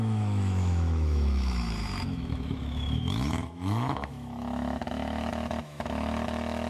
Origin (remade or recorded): remade